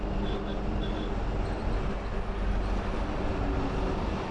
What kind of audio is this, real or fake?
real